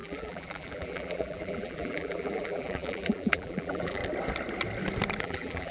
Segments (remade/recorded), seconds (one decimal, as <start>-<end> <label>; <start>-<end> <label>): 0.0-4.0 remade; 4.0-5.2 recorded; 5.2-5.7 remade